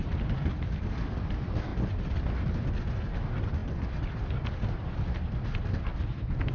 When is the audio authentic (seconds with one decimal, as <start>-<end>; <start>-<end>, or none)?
0.0-6.5

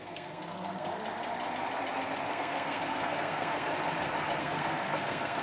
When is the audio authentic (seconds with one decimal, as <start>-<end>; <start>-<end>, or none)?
0.9-2.3; 3.7-4.4

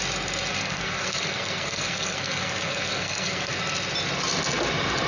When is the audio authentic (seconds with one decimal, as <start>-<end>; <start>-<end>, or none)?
0.0-0.5; 3.6-5.1

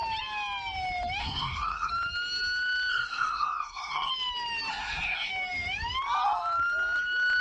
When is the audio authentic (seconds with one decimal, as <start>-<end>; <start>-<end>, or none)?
0.0-1.2; 1.9-2.9; 4.1-4.7; 5.3-7.4

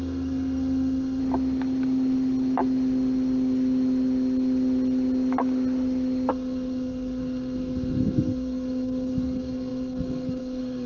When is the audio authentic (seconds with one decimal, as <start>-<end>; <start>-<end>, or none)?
1.2-6.3

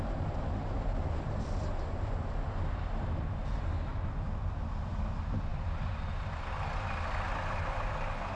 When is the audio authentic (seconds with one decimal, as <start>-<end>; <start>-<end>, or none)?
0.0-8.4